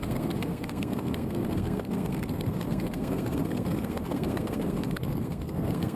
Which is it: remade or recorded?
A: remade